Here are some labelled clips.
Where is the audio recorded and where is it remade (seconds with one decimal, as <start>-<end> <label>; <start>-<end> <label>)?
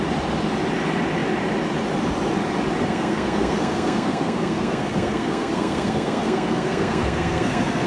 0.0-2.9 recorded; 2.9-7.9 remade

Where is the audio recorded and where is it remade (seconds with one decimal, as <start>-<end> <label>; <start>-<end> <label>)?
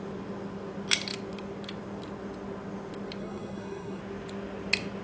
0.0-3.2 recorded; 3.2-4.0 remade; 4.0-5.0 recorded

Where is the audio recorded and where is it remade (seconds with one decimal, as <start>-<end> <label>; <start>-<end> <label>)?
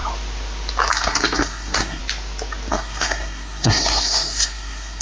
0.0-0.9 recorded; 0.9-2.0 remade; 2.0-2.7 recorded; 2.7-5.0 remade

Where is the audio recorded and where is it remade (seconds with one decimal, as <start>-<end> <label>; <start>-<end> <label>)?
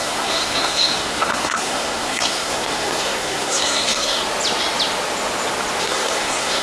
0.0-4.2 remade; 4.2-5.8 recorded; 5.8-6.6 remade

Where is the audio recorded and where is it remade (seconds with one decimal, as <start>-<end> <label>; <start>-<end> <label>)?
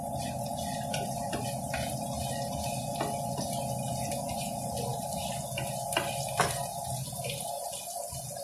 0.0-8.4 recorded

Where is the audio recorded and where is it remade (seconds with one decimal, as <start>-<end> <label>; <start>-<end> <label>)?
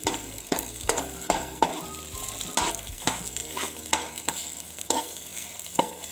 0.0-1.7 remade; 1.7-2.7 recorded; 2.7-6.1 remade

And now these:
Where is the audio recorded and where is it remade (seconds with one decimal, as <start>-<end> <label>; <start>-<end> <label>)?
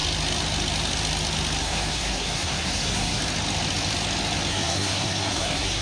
0.0-1.6 recorded; 1.6-3.2 remade; 3.2-4.5 recorded; 4.5-5.8 remade